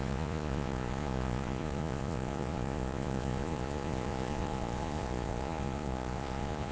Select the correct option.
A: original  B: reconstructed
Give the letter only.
B